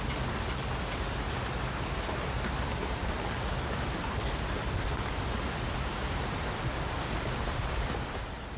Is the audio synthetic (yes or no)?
no